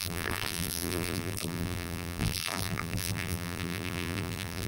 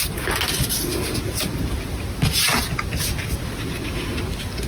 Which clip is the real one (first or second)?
second